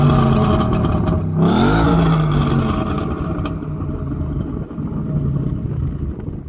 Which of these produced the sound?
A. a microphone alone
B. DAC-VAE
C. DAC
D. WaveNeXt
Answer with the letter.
A